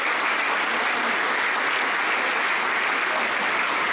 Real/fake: real